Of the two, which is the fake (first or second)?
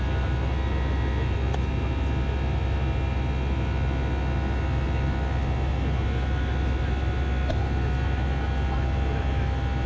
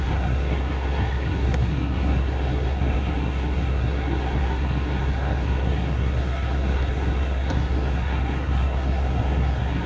second